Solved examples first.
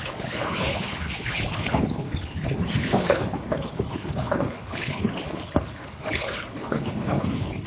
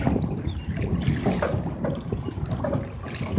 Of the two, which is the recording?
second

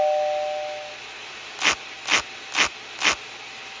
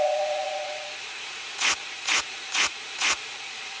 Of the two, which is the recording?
first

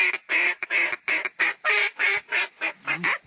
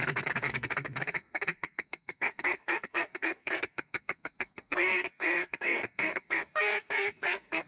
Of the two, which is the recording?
first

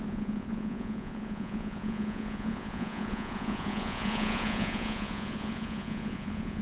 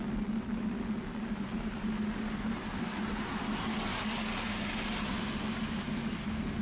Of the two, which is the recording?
second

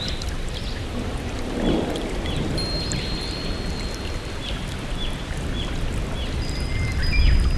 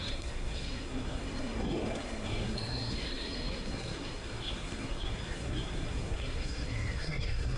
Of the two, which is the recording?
first